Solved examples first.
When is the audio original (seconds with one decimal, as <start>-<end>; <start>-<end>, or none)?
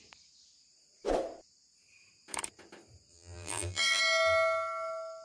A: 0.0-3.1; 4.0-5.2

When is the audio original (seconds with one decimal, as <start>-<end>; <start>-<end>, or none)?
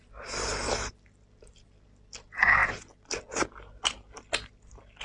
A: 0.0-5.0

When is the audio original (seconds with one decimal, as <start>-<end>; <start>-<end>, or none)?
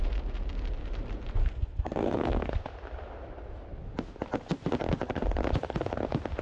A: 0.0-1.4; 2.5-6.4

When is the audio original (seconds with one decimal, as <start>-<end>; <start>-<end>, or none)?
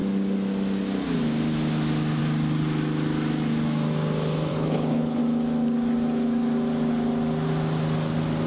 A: 0.0-4.5; 5.2-8.5